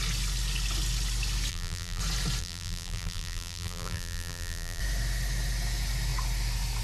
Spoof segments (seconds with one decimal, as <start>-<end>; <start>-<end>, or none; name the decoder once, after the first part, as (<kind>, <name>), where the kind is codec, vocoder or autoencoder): 1.5-2.0 (vocoder, BigVGAN v2); 2.4-4.8